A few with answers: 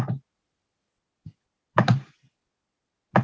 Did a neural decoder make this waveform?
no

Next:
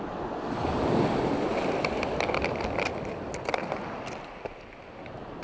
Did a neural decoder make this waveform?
no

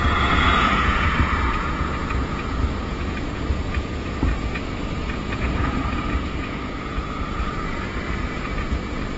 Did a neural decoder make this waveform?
yes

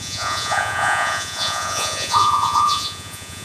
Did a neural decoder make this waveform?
yes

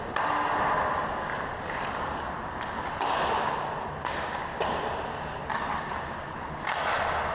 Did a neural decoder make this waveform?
no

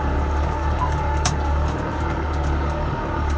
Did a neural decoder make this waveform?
yes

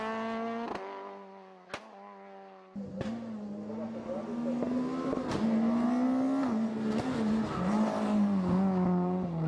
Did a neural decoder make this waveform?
no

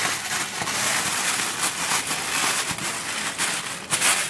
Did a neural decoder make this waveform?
no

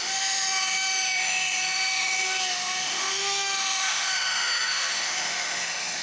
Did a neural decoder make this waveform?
yes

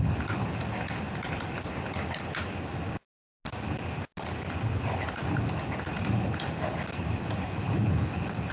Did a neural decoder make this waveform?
no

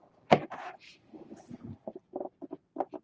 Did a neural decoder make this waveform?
no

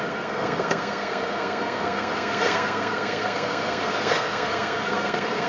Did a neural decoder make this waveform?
yes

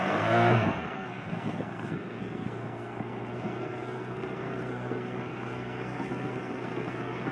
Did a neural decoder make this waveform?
yes